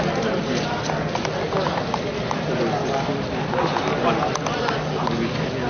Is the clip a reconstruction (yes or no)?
no